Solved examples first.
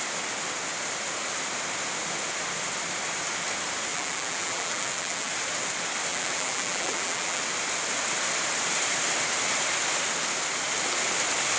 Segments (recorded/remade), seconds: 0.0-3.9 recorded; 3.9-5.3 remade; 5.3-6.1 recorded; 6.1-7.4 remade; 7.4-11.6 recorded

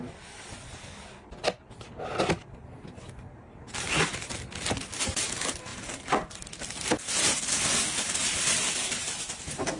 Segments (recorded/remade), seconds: 0.0-9.8 recorded